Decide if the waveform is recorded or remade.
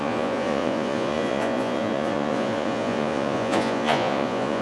remade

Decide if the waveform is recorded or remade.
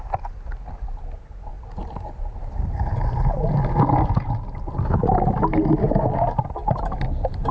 recorded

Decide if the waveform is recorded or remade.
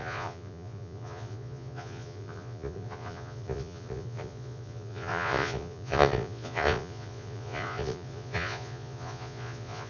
remade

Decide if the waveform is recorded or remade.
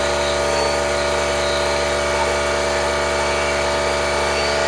recorded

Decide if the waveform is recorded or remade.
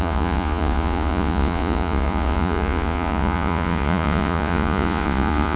remade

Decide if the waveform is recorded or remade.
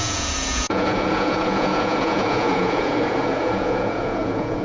remade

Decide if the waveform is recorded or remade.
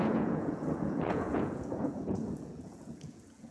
remade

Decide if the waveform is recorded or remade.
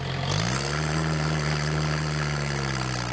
recorded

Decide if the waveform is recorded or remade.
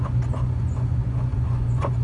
remade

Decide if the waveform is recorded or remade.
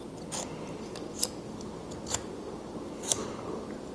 recorded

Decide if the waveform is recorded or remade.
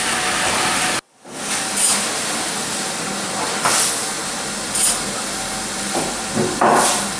recorded